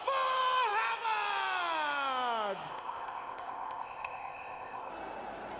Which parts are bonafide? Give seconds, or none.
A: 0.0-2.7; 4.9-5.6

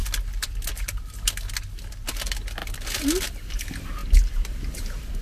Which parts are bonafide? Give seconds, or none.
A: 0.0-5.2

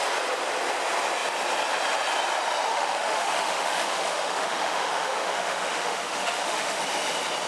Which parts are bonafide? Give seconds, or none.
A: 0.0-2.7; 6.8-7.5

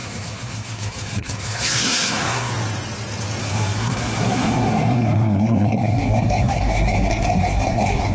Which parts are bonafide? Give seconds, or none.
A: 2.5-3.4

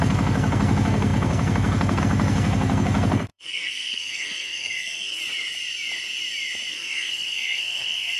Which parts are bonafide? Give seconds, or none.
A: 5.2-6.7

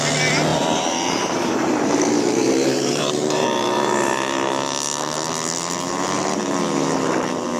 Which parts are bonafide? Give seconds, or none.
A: 0.0-0.5; 4.5-7.6

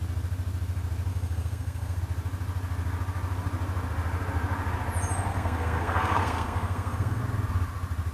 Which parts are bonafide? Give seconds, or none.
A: 0.0-1.1; 2.0-5.3; 7.2-8.1